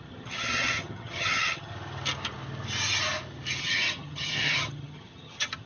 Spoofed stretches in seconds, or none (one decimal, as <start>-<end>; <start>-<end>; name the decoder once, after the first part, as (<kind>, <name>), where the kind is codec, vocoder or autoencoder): 0.0-1.7 (vocoder, HiFi-GAN); 3.6-5.7